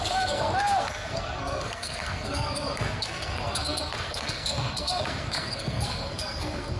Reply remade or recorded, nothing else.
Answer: remade